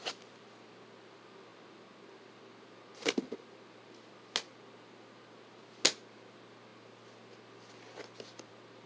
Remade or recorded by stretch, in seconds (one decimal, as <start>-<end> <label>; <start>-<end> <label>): 0.0-8.9 recorded